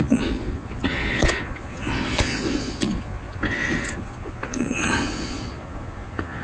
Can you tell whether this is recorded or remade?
remade